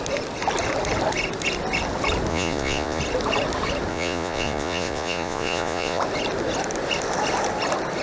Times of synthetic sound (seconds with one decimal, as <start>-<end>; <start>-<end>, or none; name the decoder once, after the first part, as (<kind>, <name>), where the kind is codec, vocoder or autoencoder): 2.3-3.0 (vocoder, Vocos); 3.9-6.0